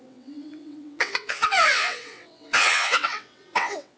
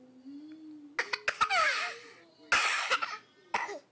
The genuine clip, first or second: second